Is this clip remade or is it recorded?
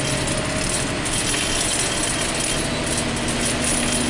recorded